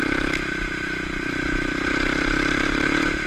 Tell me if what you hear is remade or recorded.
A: remade